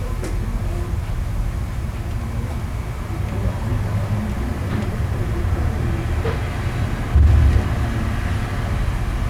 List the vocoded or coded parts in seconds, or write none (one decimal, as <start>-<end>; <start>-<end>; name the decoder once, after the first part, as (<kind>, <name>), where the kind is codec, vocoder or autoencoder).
4.5-5.8 (vocoder, BigVGAN v2)